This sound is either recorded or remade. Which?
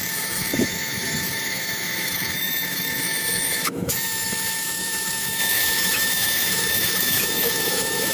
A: remade